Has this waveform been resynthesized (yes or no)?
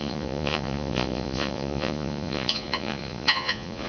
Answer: yes